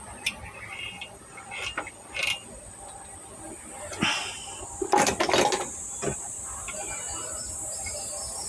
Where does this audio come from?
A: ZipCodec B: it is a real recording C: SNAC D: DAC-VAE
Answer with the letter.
B